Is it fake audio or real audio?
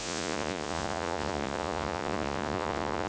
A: fake